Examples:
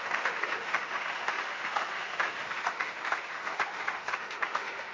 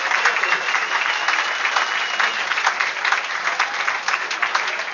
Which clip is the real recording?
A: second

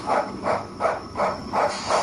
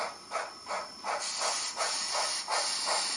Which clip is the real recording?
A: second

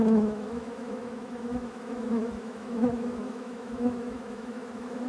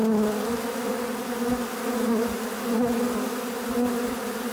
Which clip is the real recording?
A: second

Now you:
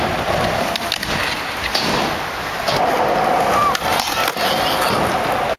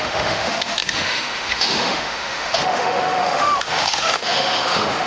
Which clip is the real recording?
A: first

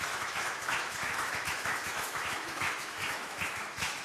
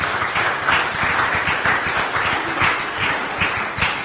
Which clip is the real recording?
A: second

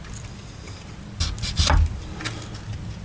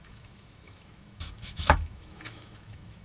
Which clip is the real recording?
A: first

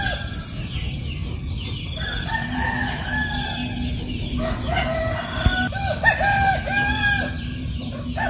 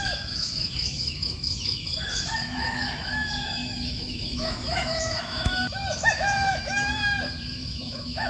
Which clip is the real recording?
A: first